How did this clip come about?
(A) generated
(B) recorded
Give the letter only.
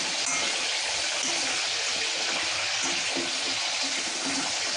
B